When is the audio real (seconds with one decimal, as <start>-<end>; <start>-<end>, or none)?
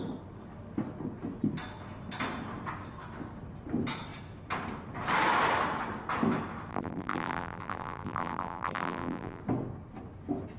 0.0-6.7; 9.4-10.6